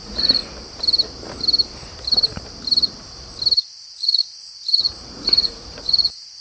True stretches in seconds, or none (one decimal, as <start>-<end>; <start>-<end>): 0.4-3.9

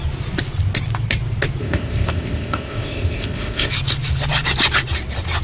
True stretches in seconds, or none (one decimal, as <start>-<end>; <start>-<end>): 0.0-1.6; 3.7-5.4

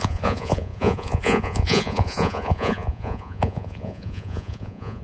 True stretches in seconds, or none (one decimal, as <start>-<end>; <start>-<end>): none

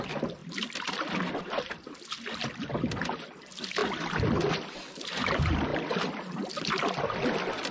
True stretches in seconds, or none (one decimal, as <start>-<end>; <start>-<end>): 0.0-0.4; 1.4-5.7; 6.5-7.7